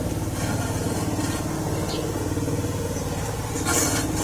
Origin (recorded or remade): recorded